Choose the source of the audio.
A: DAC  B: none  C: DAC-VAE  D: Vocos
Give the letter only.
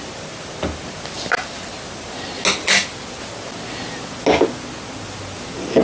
B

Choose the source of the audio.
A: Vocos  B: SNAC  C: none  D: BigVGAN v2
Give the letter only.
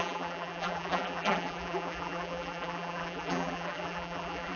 D